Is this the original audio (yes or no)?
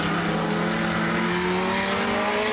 yes